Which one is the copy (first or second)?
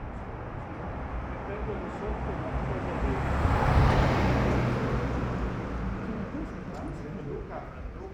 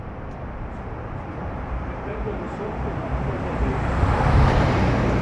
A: second